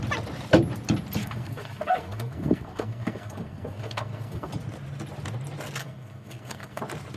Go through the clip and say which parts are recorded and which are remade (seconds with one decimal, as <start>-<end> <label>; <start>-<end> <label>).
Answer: 0.0-1.2 recorded; 1.2-4.5 remade; 4.5-5.8 recorded; 5.8-6.8 remade; 6.8-7.2 recorded